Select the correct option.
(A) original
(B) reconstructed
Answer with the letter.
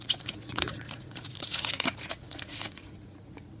B